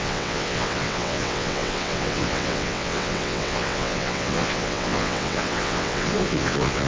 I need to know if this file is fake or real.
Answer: fake